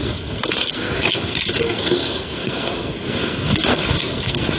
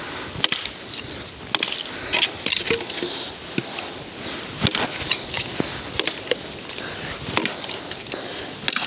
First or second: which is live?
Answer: second